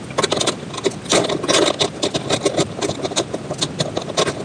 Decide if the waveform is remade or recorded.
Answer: recorded